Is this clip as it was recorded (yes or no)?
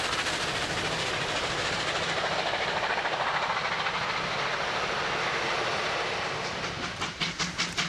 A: yes